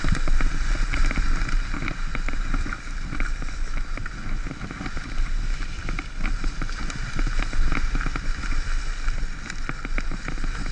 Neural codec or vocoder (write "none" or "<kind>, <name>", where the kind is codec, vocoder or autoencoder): none